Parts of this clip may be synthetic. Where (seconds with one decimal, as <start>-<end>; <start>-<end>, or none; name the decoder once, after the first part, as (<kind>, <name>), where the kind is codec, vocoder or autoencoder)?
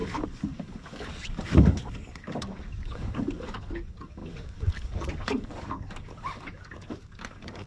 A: 0.0-7.7 (codec, DAC)